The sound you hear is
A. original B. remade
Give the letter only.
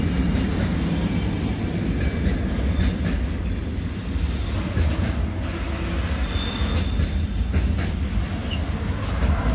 A